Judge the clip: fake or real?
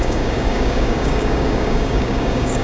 fake